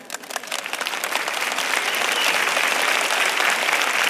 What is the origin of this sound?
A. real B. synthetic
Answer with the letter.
A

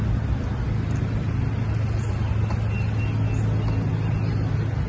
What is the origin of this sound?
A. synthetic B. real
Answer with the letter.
B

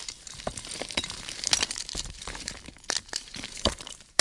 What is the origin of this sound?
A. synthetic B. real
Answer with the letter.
A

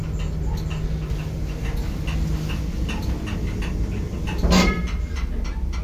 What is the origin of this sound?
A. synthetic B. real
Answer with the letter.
B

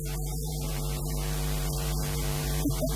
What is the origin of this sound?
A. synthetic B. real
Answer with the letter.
A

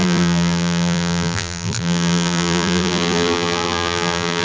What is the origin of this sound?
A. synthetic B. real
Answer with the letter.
A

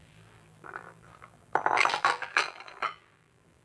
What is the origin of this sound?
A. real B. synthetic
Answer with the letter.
B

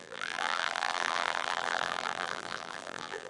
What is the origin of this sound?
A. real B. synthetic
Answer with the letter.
B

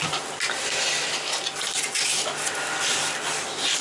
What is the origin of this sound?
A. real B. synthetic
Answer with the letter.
A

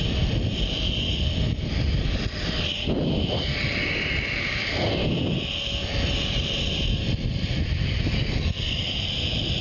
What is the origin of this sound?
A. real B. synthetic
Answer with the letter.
B